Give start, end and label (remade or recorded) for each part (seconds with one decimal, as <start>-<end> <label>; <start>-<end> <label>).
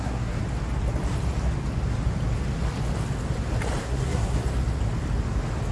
0.0-0.4 remade; 0.4-3.8 recorded; 3.8-4.4 remade; 4.4-5.7 recorded